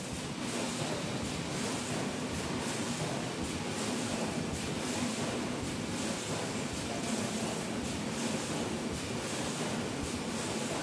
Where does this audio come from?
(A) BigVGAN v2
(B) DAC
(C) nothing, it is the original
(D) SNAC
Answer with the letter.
C